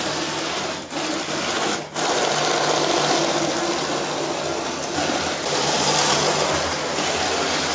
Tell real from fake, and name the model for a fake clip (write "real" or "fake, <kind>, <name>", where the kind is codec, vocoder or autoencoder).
real